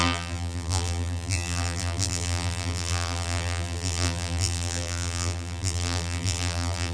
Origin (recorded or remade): remade